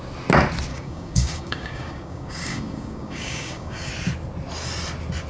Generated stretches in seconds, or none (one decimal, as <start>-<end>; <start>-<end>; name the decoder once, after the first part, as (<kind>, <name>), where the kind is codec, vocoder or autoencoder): 0.7-3.9 (codec, DAC)